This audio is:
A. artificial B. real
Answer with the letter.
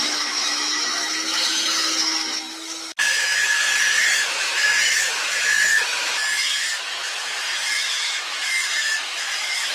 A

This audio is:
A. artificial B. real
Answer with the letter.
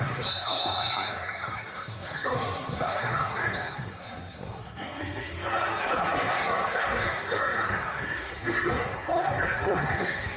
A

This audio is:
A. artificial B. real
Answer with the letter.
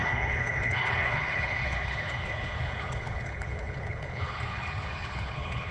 A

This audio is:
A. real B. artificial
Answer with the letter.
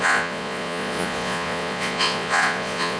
B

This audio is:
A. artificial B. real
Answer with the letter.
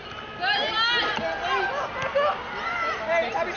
B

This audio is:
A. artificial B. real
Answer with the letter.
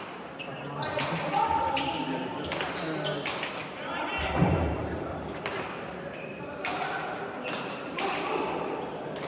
B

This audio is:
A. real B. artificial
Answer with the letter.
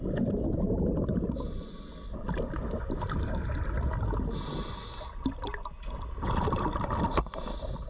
A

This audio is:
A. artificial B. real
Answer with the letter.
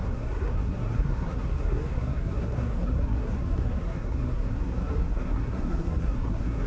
A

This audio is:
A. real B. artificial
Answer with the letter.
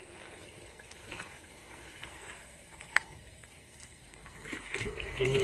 B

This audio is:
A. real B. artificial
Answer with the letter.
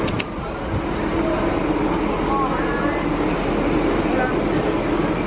A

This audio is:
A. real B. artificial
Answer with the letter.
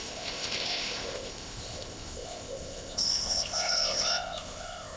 B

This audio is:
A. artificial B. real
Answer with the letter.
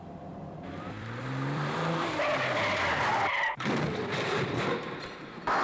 A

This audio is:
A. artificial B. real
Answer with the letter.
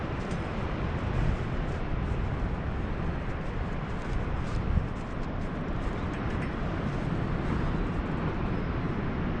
B